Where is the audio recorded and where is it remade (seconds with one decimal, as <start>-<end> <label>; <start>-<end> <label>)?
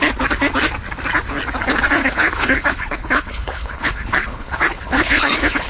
0.0-2.0 recorded; 2.0-5.7 remade